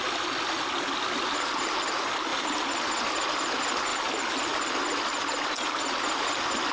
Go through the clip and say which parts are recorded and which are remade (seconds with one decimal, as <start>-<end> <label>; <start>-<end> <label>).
0.0-6.7 recorded